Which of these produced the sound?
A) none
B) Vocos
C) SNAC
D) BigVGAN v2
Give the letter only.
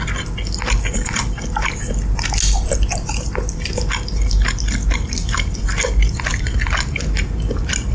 A